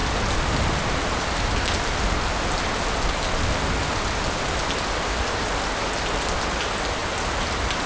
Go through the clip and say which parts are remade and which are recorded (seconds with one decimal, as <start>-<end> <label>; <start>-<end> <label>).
0.0-7.9 recorded